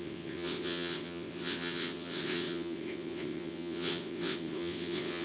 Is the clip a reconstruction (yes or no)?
yes